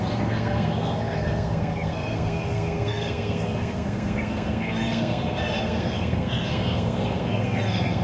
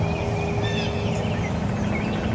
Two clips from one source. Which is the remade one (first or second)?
first